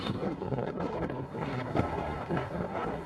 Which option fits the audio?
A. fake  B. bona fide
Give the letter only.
A